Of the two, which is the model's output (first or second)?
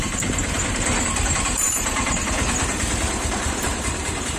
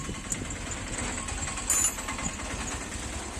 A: first